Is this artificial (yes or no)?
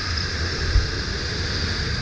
no